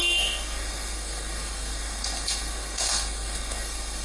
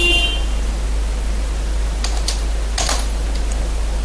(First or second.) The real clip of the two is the second